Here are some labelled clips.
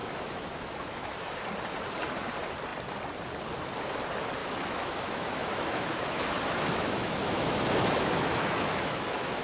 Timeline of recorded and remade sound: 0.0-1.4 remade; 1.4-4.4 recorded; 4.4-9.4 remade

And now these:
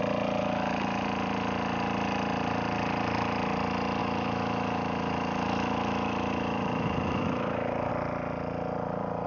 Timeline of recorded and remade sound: 0.0-0.4 recorded; 0.4-1.0 remade; 1.0-4.0 recorded; 4.0-7.9 remade; 7.9-9.3 recorded

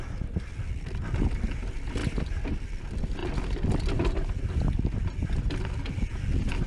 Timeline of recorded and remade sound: 0.0-6.7 recorded

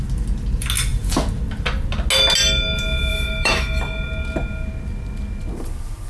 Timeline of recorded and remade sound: 0.0-3.1 recorded; 3.1-3.8 remade; 3.8-6.1 recorded